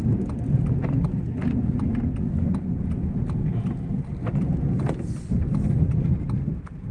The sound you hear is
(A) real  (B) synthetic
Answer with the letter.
A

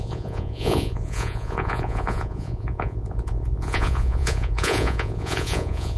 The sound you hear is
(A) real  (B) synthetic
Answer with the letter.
B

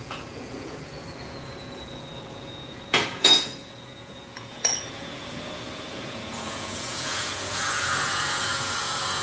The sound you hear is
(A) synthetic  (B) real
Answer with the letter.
A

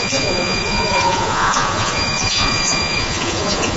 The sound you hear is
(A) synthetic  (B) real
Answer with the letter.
A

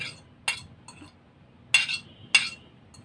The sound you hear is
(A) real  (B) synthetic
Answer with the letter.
A